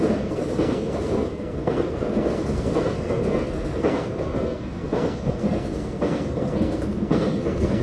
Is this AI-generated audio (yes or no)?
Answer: yes